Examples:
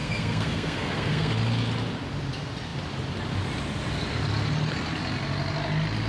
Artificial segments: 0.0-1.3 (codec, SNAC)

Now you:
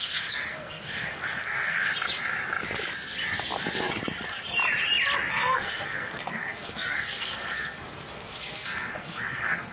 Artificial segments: 0.0-1.9 (codec, SNAC); 5.3-9.7

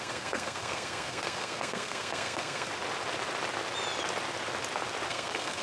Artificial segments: 0.0-2.7 (codec, SNAC); 5.1-5.6

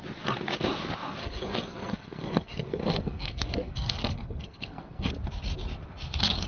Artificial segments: 1.2-5.1 (codec, SNAC)